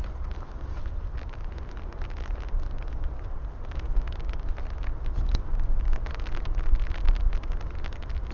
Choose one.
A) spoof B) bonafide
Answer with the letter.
B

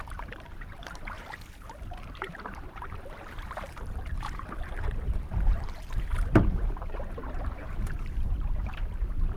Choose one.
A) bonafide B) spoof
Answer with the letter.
B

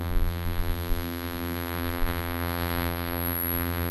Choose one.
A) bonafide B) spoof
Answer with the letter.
B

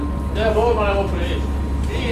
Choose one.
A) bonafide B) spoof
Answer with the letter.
A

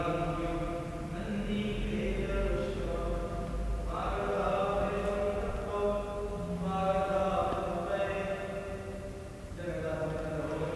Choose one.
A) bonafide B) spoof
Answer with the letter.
A